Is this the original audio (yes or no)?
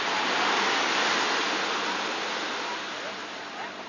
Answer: yes